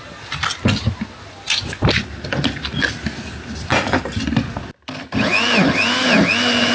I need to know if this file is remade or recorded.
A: recorded